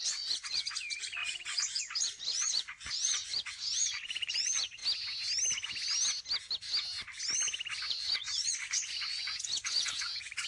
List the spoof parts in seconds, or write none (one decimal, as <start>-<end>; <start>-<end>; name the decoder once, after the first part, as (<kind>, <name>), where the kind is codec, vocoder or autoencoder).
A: 0.0-4.8 (vocoder, Vocos); 7.9-10.5